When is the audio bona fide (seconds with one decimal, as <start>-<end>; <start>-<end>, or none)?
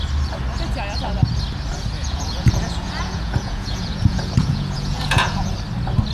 0.0-2.0; 5.5-6.1